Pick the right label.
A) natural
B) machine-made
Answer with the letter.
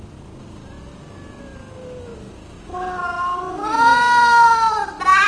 A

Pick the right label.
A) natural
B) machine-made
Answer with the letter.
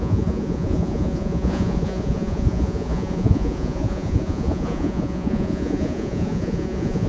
B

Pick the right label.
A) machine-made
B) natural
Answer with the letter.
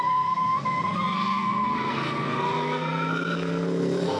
A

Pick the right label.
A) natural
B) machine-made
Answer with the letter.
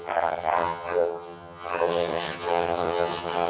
B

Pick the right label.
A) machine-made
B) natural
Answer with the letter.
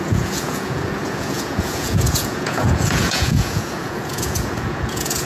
A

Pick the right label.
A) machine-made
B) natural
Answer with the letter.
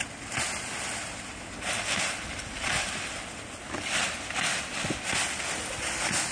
B